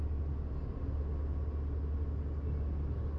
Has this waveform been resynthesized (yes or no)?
no